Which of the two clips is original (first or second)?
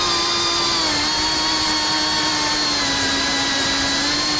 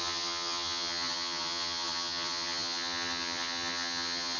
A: first